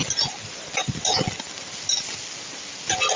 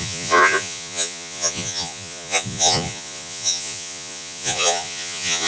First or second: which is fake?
second